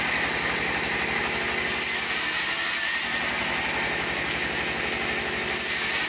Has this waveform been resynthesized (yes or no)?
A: no